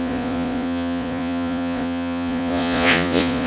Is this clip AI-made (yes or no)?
yes